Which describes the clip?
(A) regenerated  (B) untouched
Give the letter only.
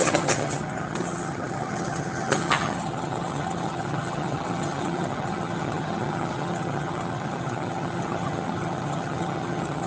A